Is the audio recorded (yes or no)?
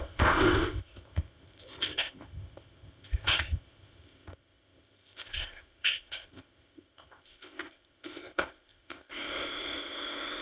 no